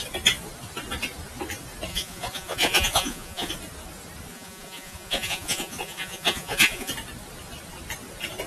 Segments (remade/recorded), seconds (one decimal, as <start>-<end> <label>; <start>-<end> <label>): 0.0-1.9 recorded; 1.9-3.5 remade; 3.5-4.3 recorded; 4.3-6.9 remade; 6.9-8.5 recorded